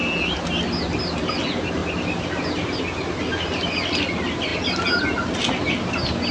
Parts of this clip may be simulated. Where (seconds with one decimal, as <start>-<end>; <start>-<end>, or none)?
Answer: none